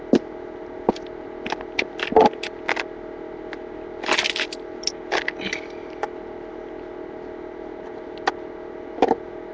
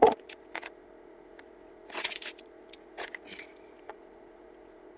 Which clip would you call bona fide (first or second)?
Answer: first